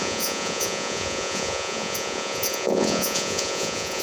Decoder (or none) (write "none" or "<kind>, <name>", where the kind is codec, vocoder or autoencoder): vocoder, Vocos